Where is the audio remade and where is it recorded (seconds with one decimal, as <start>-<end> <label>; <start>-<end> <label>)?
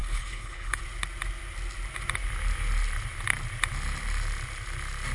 0.0-0.8 remade; 0.8-5.1 recorded